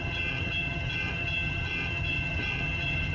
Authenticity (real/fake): fake